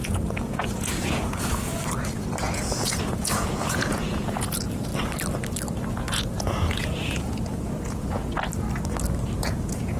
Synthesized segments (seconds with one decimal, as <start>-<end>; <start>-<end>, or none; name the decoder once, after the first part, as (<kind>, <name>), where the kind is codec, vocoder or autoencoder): 0.0-1.7 (vocoder, Vocos); 2.4-4.9; 5.9-8.3; 9.4-10.0